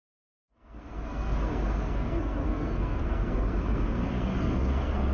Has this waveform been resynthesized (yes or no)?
yes